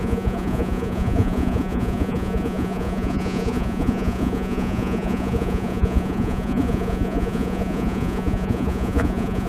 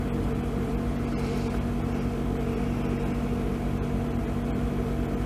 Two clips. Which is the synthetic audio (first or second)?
first